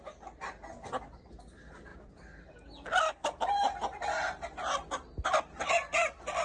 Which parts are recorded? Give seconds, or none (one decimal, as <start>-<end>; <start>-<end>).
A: 0.0-6.4